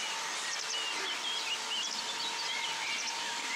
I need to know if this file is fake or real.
real